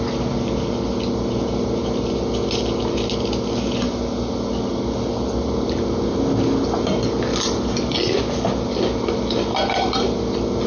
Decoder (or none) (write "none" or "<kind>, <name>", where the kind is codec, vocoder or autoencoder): none